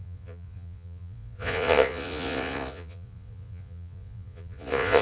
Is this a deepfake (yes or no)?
yes